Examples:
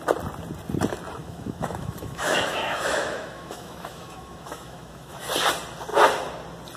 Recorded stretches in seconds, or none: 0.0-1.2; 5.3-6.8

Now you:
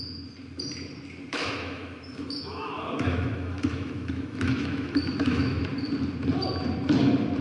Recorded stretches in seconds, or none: 0.0-1.3; 5.6-7.4

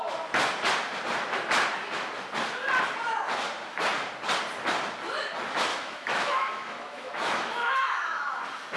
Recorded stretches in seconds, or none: 0.0-5.7; 8.4-8.8

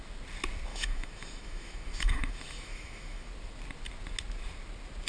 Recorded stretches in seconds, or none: 0.0-0.7; 3.3-5.1

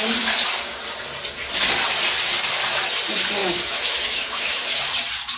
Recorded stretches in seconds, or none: 0.0-3.4; 4.8-5.4

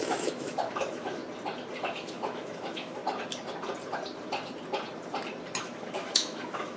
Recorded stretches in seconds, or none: 1.2-1.8; 3.0-5.6

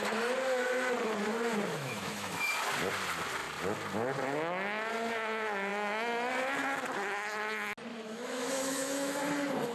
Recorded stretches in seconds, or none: 0.0-1.7; 2.5-5.7; 6.3-7.9; 9.2-9.7

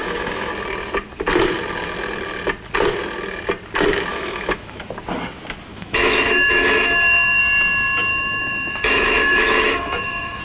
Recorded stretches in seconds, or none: 0.5-4.1; 4.8-5.7; 7.4-8.1